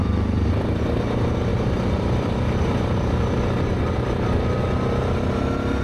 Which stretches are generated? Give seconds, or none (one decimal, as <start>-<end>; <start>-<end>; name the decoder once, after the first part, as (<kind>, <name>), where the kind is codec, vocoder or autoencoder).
0.0-0.8 (vocoder, BigVGAN v2); 1.5-4.6